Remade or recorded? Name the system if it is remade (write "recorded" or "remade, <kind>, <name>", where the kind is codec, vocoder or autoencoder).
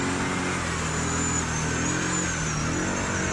recorded